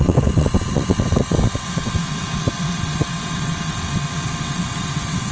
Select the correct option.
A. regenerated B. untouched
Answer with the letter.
A